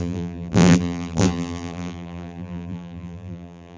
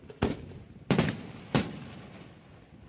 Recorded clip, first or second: second